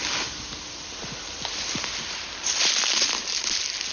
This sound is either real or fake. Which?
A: real